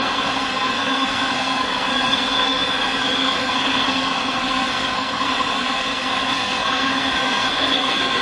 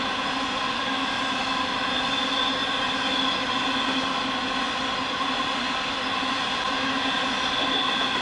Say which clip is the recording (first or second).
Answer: second